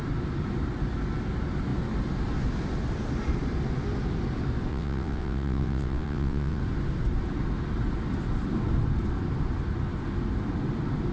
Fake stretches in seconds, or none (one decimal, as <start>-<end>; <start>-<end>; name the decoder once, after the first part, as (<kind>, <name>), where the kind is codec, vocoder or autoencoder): 4.7-6.6 (vocoder, WaveNeXt)

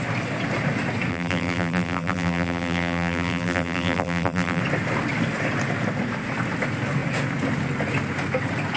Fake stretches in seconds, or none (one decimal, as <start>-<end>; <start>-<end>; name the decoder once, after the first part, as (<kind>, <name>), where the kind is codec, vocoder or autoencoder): 1.1-4.6 (vocoder, BigVGAN v2)

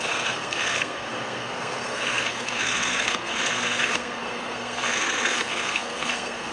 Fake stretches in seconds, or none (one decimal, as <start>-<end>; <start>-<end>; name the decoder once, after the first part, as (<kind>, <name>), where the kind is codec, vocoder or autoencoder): 0.0-6.5 (codec, SNAC)

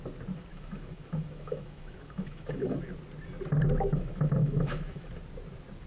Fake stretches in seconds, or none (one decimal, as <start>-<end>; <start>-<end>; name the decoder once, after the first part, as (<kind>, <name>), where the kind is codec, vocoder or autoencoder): 0.5-2.8 (autoencoder, DAC-VAE); 3.9-5.1

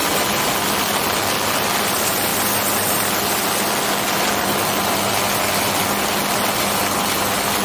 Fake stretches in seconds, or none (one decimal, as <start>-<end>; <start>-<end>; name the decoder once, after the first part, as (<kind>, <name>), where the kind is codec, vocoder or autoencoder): none

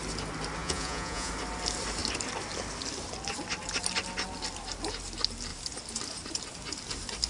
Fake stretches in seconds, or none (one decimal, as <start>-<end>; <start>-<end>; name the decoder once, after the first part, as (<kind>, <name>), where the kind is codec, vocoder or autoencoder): 0.6-1.3 (vocoder, Vocos)

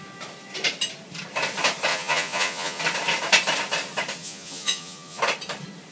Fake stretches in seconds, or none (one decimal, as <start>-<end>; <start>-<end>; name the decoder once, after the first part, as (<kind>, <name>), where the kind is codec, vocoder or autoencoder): 1.9-2.8 (vocoder, Vocos); 4.2-5.2